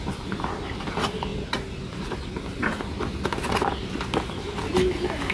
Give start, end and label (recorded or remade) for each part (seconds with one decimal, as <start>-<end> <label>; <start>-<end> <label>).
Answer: 0.0-5.3 recorded